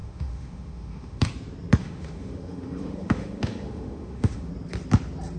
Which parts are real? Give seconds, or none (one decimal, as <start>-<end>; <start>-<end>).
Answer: 1.3-1.8; 4.5-5.4